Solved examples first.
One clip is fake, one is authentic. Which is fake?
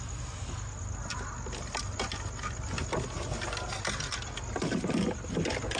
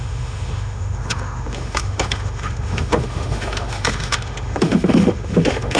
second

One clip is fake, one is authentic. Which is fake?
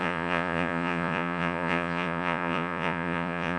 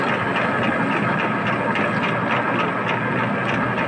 first